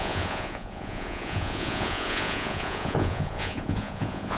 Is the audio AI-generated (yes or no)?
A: yes